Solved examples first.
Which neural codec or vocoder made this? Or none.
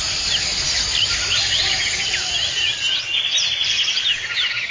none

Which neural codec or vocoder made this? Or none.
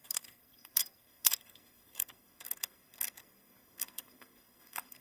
codec, SNAC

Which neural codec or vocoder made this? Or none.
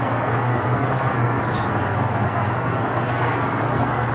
codec, SNAC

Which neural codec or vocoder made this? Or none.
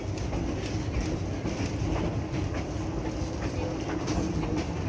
none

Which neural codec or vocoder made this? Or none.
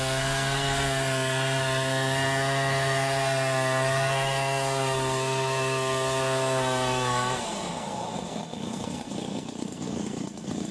codec, SNAC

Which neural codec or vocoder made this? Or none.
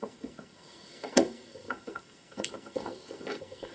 codec, SNAC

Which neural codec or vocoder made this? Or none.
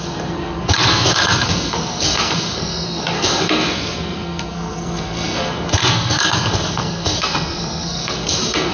codec, SNAC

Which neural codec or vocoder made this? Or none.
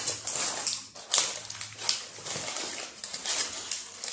none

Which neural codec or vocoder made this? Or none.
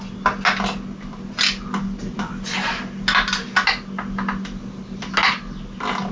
none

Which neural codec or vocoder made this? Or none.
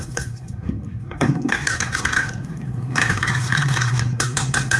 codec, SNAC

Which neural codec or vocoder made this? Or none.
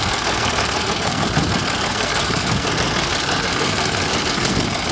codec, SNAC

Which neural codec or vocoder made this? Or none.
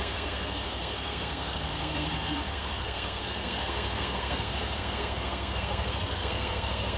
codec, SNAC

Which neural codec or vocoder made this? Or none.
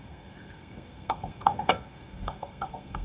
codec, SNAC